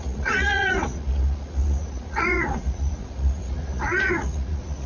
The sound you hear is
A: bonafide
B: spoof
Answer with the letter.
B